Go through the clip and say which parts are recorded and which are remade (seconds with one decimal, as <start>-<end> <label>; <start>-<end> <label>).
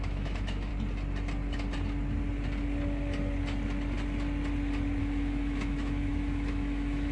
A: 0.0-0.7 remade; 0.7-5.0 recorded; 5.0-7.1 remade